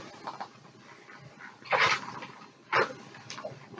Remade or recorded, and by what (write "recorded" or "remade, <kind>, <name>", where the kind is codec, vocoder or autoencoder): recorded